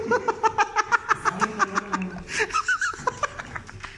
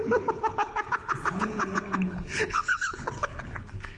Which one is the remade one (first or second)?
second